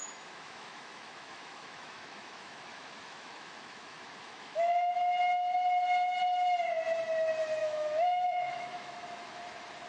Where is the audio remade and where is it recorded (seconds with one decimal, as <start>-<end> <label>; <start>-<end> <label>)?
0.0-4.9 remade; 4.9-7.6 recorded; 7.6-9.4 remade; 9.4-9.9 recorded